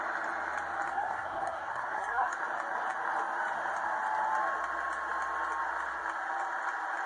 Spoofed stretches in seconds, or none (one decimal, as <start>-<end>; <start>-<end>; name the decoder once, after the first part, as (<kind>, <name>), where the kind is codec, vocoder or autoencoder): 0.9-2.4 (codec, SNAC)

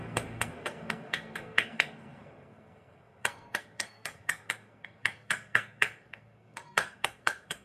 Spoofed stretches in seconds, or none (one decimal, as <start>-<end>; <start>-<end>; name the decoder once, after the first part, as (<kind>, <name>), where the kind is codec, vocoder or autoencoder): 0.0-7.6 (codec, SNAC)

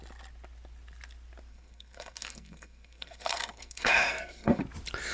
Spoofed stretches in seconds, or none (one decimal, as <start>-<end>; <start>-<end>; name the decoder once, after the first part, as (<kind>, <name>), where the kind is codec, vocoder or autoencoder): 1.5-4.6 (codec, SNAC)

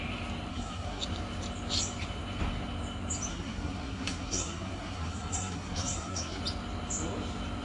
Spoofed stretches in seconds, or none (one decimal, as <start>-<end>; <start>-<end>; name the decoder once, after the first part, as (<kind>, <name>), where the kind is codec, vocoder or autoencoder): 0.5-1.0 (codec, SNAC); 3.3-6.4

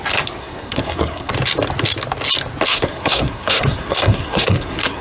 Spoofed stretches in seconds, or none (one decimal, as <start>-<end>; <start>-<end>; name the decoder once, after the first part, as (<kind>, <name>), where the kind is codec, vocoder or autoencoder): 0.4-1.3 (codec, SNAC); 2.7-5.0